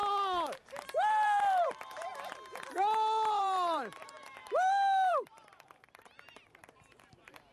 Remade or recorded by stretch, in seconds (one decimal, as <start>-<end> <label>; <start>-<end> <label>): 0.0-1.1 recorded; 1.1-2.1 remade; 2.1-3.4 recorded; 3.4-7.5 remade